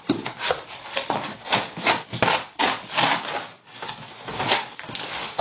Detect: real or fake real